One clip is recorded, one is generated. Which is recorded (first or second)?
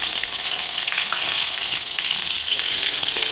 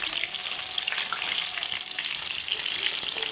second